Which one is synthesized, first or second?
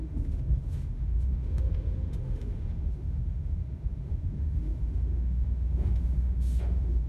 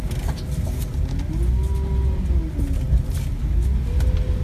first